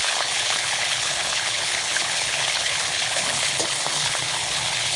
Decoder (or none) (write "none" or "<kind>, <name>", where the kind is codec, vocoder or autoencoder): codec, HILCodec